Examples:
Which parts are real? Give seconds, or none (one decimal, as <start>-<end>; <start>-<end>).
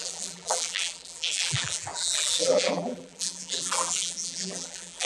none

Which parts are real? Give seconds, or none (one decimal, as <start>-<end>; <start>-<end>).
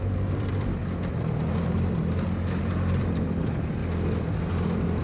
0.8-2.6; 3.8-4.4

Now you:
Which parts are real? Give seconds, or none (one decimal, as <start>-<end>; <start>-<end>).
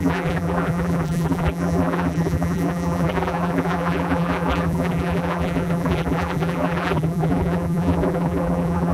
none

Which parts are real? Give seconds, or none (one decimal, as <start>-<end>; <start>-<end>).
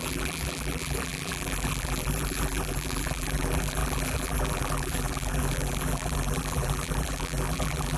none